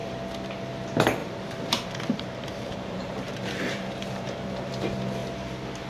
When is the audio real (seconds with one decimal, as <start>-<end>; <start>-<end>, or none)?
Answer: 0.0-1.2; 4.7-5.9